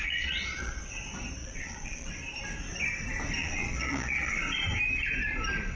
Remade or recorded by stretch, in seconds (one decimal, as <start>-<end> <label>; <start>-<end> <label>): 0.0-0.8 remade; 0.8-1.4 recorded; 1.4-2.1 remade; 2.1-3.4 recorded; 3.4-4.3 remade; 4.3-5.8 recorded